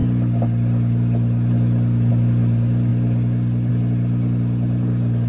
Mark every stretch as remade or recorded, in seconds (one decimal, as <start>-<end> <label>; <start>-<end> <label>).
0.0-5.3 recorded